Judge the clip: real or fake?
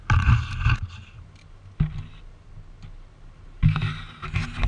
real